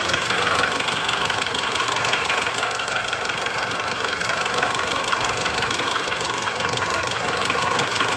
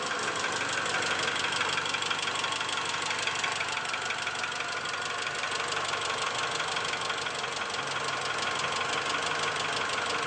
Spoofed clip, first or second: first